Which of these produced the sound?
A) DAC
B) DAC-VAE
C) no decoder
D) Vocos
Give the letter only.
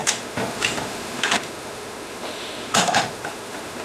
B